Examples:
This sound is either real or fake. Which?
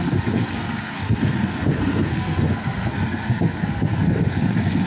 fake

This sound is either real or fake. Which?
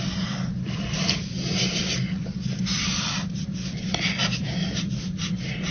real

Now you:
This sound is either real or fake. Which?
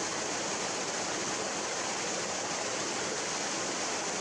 real